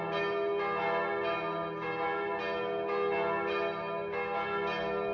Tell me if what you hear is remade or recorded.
recorded